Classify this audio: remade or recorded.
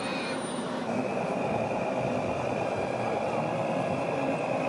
recorded